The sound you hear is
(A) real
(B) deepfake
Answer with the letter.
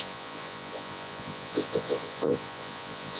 B